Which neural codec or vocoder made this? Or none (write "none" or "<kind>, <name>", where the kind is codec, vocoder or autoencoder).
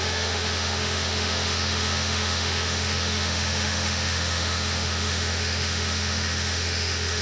autoencoder, DAC-VAE